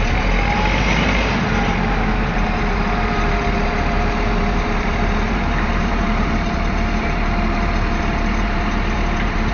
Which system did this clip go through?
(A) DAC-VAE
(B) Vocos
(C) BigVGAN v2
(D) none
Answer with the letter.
C